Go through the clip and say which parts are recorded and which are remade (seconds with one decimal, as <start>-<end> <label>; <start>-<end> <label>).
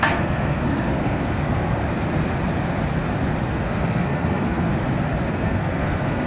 0.0-1.8 remade; 1.8-3.4 recorded; 3.4-4.7 remade; 4.7-5.3 recorded; 5.3-6.3 remade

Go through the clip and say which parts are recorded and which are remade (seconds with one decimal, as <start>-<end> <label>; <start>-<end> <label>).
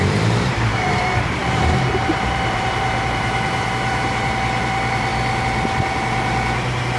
0.0-5.1 remade; 5.1-7.0 recorded